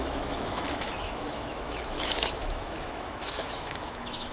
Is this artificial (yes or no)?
yes